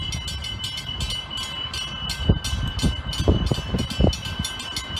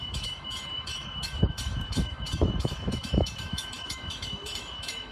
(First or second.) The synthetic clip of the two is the second